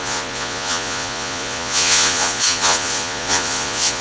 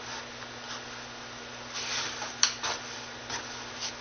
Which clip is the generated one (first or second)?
first